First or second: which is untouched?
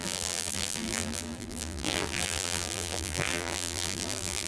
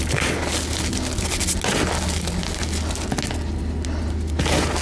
second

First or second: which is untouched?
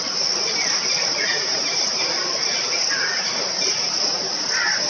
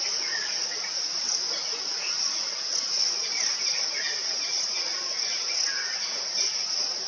second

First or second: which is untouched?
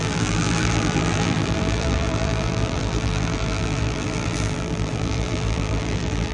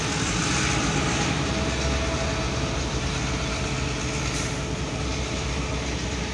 second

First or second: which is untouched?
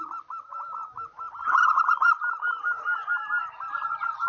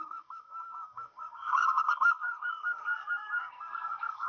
first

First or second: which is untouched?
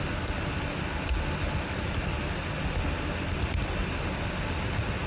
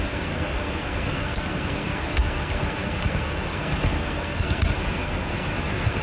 first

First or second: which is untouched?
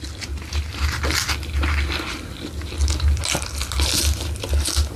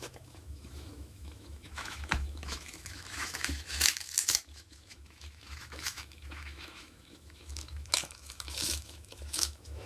first